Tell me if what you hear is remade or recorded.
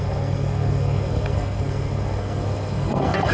remade